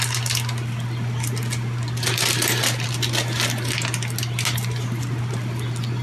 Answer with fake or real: real